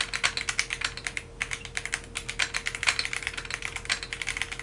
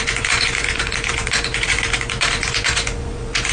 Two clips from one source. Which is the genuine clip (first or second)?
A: first